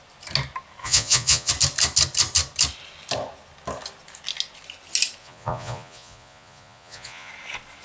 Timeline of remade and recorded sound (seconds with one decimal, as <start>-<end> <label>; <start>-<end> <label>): 0.0-0.8 recorded; 0.8-1.5 remade; 1.5-5.2 recorded; 5.2-7.3 remade; 7.3-7.8 recorded